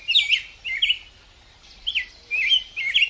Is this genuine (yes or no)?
yes